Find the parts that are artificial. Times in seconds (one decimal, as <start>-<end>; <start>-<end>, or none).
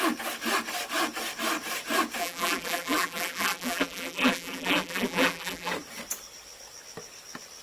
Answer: 2.2-5.7